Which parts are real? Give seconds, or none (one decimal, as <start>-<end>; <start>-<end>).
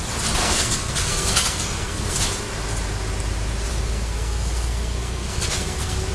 0.0-0.4; 2.2-3.7